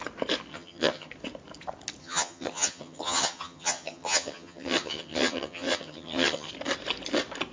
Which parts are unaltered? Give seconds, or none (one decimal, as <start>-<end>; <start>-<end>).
0.0-0.5; 1.1-2.0; 6.5-7.5